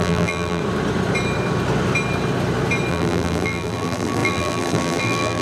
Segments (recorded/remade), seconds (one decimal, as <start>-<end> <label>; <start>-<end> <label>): 0.0-0.6 remade; 0.6-2.9 recorded; 2.9-5.4 remade